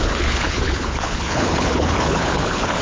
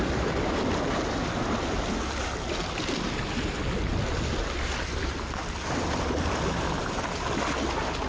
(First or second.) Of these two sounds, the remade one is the first